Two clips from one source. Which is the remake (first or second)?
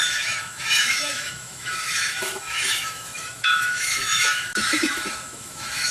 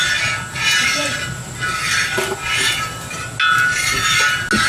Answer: first